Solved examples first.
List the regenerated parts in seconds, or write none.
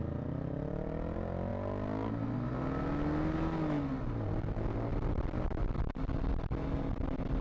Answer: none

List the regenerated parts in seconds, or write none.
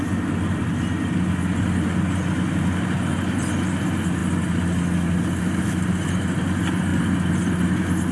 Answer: none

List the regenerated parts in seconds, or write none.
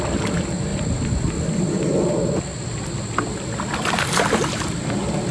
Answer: none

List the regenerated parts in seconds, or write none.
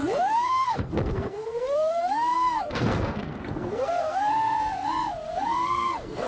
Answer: 0.0-6.3 (codec, SNAC)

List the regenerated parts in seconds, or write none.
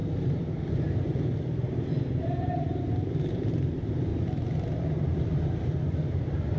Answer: 0.0-3.5 (vocoder, BigVGAN v2); 4.1-5.2